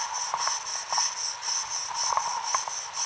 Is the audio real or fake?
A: real